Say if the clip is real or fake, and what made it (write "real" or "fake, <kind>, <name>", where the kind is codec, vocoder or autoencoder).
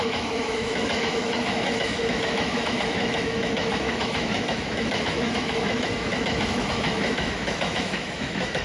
fake, autoencoder, DAC-VAE